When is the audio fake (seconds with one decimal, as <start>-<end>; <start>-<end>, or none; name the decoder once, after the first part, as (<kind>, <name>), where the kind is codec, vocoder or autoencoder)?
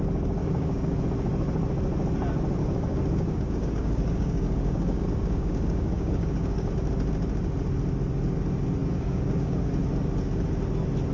0.4-1.0 (codec, DAC); 2.6-6.7; 8.8-9.7